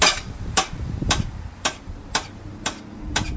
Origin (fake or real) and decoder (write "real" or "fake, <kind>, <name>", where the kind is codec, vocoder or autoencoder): fake, vocoder, BigVGAN v2